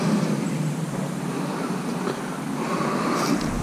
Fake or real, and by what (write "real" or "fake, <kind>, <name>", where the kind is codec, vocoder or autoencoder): real